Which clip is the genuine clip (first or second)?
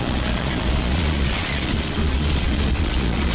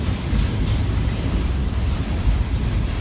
second